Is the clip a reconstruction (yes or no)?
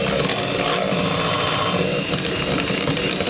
no